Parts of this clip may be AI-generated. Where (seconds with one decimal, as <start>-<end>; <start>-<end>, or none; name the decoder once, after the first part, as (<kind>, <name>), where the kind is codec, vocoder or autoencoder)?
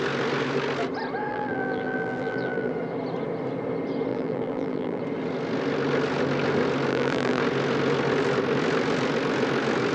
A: 1.3-2.7 (vocoder, BigVGAN v2); 4.1-5.0; 6.9-7.4